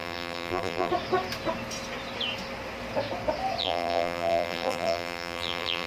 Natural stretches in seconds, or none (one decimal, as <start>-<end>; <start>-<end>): 0.9-3.6